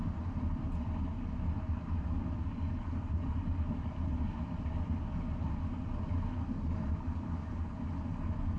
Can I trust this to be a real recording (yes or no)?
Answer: yes